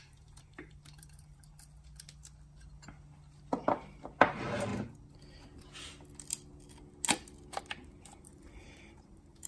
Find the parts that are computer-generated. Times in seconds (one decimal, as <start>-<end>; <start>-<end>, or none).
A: 0.0-1.5; 4.3-4.7; 8.2-9.5